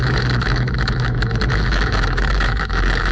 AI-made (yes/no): yes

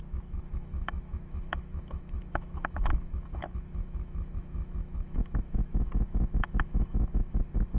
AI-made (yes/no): yes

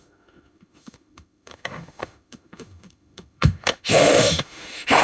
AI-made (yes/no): yes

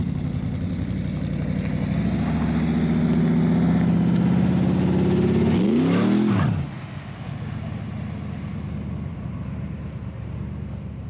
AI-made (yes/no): no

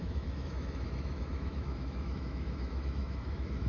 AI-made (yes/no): yes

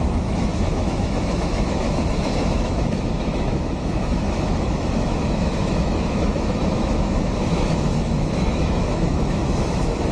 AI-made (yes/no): yes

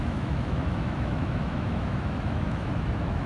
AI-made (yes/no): yes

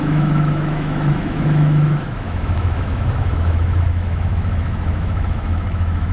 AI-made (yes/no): yes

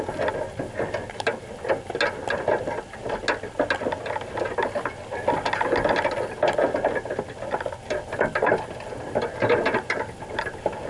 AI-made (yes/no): no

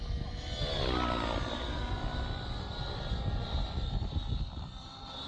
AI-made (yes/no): no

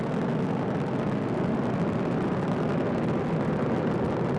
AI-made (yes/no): no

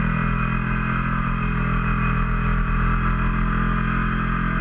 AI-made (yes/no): no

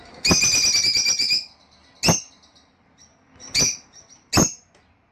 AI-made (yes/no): no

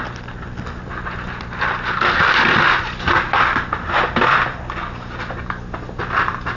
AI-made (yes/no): no